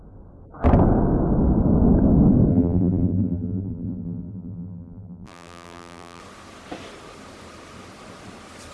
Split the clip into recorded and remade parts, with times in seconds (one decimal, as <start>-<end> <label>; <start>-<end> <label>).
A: 0.0-2.5 recorded; 2.5-6.2 remade; 6.2-8.7 recorded